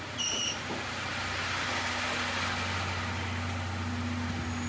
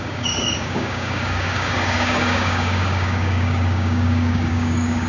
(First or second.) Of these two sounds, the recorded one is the first